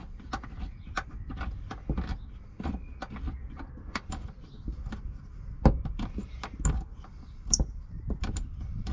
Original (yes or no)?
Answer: yes